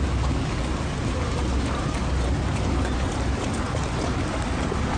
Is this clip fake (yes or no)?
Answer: no